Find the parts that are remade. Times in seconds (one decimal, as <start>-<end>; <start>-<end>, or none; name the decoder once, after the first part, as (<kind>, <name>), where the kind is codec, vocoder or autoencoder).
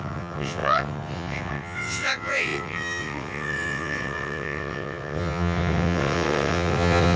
0.0-7.2 (vocoder, WaveNeXt)